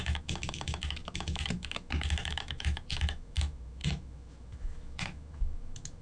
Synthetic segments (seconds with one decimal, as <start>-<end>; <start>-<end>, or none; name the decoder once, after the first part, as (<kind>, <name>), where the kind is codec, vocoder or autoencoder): 0.0-6.0 (autoencoder, DAC-VAE)